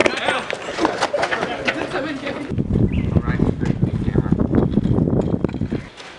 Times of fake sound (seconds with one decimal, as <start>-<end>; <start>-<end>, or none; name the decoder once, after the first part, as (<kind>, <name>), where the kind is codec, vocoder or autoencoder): none